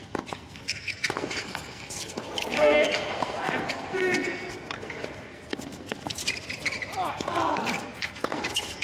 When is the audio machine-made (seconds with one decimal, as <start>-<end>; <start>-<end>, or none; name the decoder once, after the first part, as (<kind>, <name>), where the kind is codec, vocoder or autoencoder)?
0.0-6.2 (codec, SNAC); 7.1-8.8